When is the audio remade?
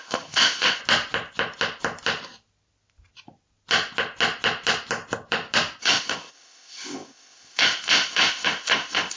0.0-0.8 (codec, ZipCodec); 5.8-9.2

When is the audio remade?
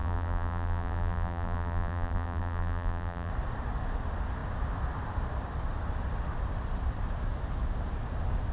0.0-3.3 (vocoder, BigVGAN v2)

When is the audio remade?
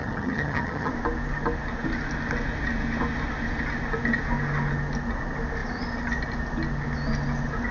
0.0-0.9 (vocoder, HiFi-GAN)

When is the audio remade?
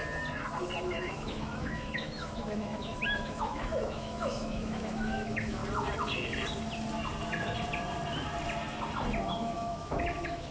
0.8-5.6 (autoencoder, DAC-VAE); 9.3-10.5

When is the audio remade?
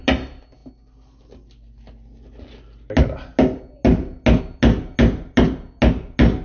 none